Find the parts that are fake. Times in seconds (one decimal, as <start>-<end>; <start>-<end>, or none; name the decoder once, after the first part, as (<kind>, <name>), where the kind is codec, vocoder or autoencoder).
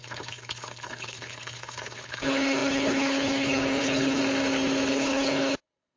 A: 0.0-4.2 (codec, HILCodec); 4.9-6.0